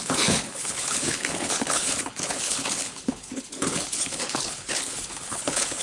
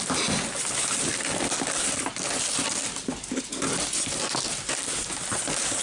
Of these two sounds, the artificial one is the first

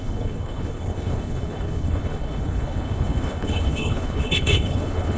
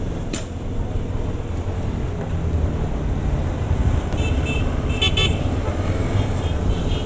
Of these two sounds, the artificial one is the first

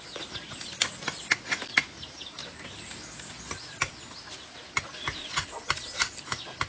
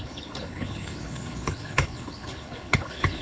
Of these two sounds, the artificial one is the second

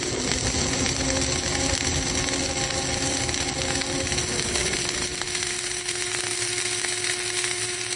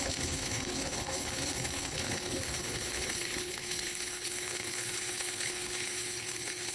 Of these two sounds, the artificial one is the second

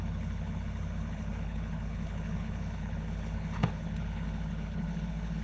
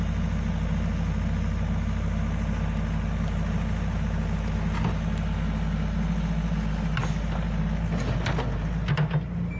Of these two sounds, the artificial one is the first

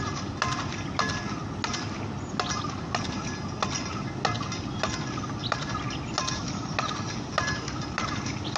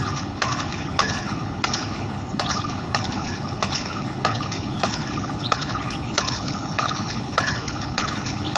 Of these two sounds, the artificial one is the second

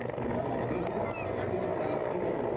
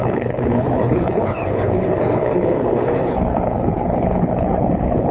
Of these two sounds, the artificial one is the second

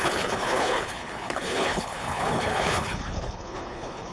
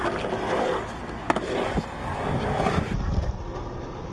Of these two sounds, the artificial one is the first